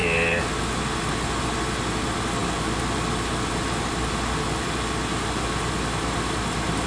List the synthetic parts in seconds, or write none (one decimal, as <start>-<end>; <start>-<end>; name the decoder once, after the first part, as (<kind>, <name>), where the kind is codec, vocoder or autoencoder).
none

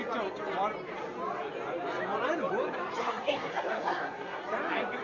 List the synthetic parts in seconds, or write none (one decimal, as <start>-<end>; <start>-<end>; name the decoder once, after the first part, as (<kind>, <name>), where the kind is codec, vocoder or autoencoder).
3.0-4.4 (codec, SNAC)

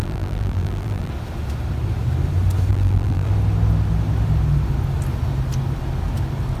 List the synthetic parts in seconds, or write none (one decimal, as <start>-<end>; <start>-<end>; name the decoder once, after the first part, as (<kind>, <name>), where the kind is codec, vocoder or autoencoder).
0.0-1.1 (vocoder, BigVGAN v2); 2.7-3.3

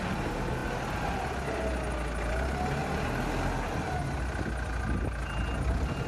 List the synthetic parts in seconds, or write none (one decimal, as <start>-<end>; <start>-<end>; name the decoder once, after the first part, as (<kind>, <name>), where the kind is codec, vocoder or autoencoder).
none

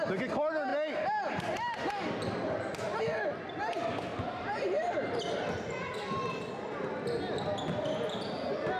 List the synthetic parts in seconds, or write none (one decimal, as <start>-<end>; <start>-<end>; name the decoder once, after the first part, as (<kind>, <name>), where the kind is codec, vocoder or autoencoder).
4.1-5.1 (vocoder, BigVGAN v2)

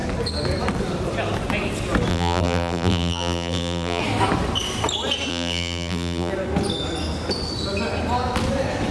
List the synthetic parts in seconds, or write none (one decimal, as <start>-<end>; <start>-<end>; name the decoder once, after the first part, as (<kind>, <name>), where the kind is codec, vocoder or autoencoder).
2.1-4.0 (vocoder, BigVGAN v2); 5.3-6.3